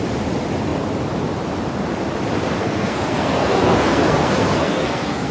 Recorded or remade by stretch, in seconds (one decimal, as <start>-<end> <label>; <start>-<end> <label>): 0.0-2.6 recorded; 2.6-5.3 remade